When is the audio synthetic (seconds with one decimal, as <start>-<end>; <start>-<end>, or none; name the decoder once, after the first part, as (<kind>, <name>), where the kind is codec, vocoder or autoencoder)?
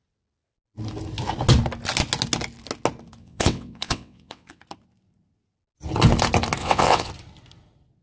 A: 3.2-4.6 (vocoder, WaveNeXt); 6.6-7.1